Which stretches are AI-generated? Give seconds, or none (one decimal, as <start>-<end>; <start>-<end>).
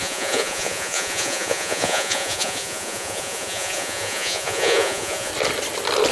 0.0-5.3